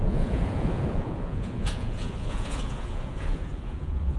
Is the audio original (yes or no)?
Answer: no